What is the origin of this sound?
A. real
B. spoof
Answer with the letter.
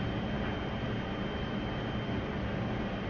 A